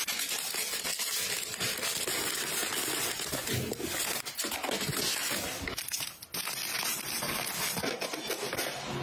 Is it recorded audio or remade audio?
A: recorded